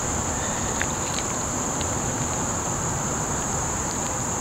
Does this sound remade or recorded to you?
remade